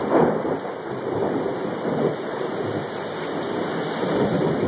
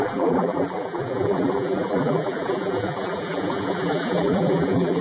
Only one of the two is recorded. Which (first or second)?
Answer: first